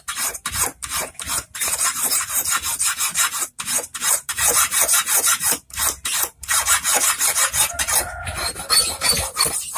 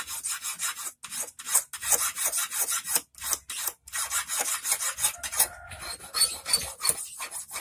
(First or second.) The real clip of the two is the second